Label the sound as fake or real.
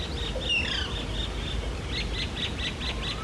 real